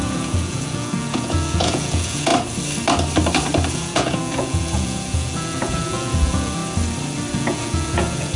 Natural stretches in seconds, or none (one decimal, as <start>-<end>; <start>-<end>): 2.3-3.7; 6.6-7.3